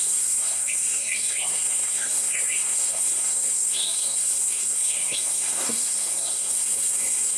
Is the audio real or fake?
fake